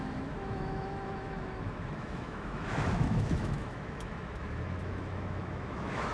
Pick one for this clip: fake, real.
fake